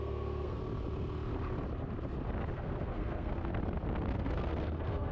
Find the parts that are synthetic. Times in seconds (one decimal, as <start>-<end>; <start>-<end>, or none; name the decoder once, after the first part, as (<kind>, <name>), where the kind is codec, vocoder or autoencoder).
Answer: 0.0-0.6 (codec, SNAC); 2.5-3.5; 4.1-5.1